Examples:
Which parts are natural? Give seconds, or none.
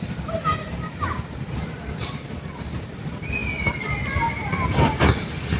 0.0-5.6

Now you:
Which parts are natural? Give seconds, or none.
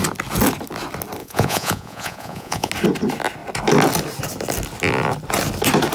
0.0-1.2; 2.7-5.9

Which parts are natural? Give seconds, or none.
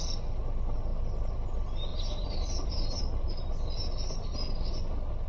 0.0-1.9; 3.0-5.3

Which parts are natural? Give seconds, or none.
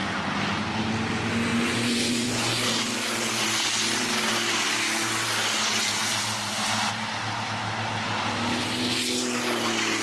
0.0-1.5; 2.5-10.0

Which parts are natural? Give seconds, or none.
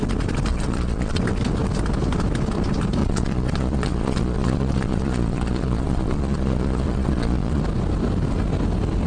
0.0-0.5; 1.2-3.0; 7.6-9.1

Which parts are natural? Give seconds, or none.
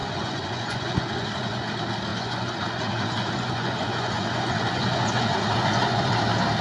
1.7-2.1; 6.1-6.6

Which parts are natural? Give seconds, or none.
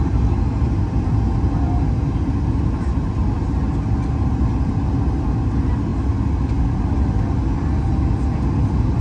0.0-9.0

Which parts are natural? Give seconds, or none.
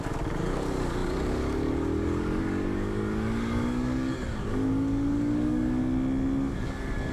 5.8-6.6